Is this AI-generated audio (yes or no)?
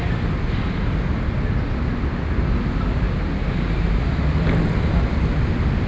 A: no